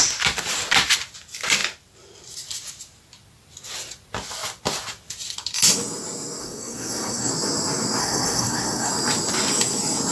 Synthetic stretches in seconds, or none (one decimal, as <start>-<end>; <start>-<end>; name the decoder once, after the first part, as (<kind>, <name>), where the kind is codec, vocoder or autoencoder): 6.4-7.3 (codec, SNAC); 8.0-8.9